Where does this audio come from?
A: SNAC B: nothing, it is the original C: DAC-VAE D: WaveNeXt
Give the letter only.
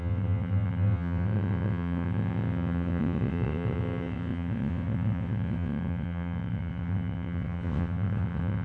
D